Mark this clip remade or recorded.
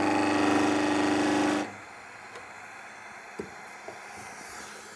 recorded